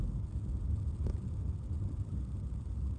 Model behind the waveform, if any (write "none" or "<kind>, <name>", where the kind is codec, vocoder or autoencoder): none